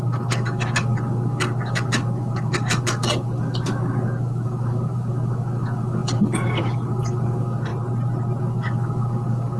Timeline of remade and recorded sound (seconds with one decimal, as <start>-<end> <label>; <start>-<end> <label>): 0.0-7.7 remade; 7.7-8.4 recorded; 8.4-9.6 remade